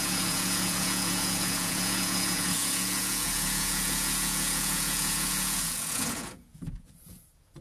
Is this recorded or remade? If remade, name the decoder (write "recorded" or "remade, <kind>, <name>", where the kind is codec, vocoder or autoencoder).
remade, vocoder, Vocos